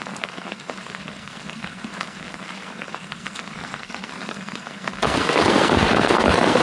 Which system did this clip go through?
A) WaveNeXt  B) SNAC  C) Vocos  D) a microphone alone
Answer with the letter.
B